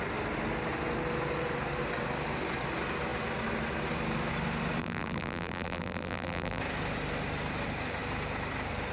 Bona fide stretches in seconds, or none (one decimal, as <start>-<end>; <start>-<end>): 0.0-4.8; 6.6-8.9